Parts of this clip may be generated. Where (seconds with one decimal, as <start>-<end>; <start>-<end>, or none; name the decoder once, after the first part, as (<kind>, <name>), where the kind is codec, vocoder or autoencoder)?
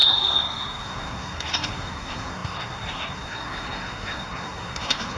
0.0-5.2 (codec, SNAC)